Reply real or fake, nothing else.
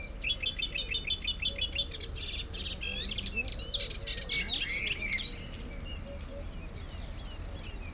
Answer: real